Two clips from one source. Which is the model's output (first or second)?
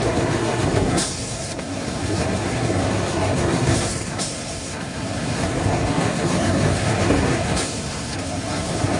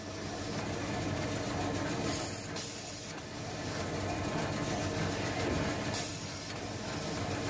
first